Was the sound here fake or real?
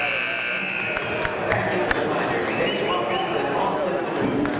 real